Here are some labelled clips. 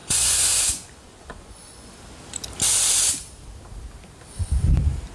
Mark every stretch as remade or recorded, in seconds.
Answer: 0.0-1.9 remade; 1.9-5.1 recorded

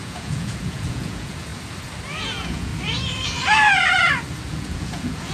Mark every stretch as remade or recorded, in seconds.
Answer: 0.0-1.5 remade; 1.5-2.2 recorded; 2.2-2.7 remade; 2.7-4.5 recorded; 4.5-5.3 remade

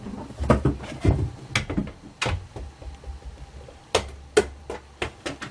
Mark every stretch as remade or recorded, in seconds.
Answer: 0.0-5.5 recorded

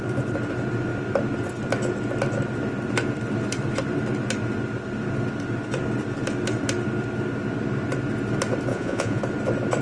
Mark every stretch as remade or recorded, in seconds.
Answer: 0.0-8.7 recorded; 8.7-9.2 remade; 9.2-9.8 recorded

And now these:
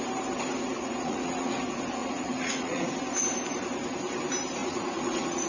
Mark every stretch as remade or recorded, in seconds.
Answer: 0.0-0.7 recorded; 0.7-1.6 remade; 1.6-2.0 recorded; 2.0-2.8 remade; 2.8-4.6 recorded; 4.6-5.5 remade

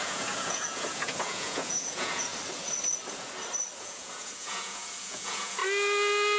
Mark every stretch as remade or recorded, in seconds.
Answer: 0.0-2.3 remade; 2.3-3.8 recorded; 3.8-5.6 remade; 5.6-6.4 recorded

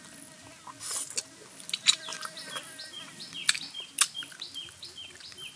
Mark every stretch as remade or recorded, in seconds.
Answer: 0.0-5.6 recorded

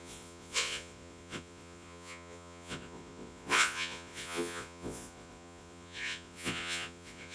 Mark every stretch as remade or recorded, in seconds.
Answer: 0.0-7.3 remade